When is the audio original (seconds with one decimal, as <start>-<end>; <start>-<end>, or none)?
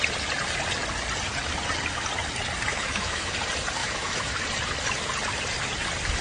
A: 0.0-2.7; 3.3-3.8; 4.3-6.2